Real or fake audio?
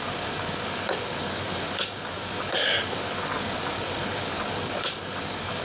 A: fake